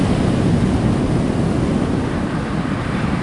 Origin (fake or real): real